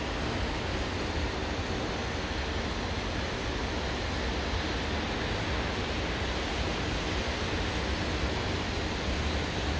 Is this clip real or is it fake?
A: real